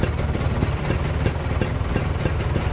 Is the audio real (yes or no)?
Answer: yes